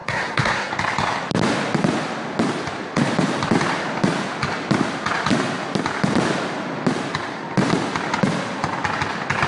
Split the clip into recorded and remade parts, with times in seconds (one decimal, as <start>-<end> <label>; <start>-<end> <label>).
0.0-0.7 remade; 0.7-9.5 recorded